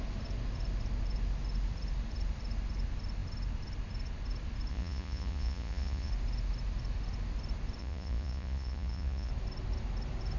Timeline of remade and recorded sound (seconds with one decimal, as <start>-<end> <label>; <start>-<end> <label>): 0.0-4.7 recorded; 4.7-6.1 remade; 6.1-7.8 recorded; 7.8-9.3 remade; 9.3-10.4 recorded

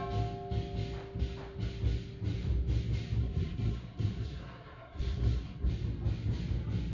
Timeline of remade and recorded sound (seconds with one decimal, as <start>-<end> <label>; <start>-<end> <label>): 0.0-3.2 recorded; 3.2-5.7 remade; 5.7-6.9 recorded

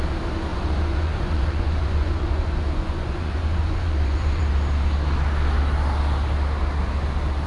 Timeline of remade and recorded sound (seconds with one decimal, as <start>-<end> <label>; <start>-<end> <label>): 0.0-0.5 recorded; 0.5-4.4 remade; 4.4-7.5 recorded

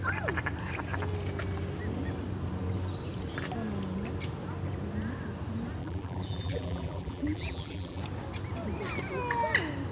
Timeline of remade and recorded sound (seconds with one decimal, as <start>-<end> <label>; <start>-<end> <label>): 0.0-5.8 recorded; 5.8-8.0 remade; 8.0-9.9 recorded